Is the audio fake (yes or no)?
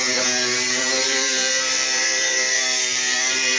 yes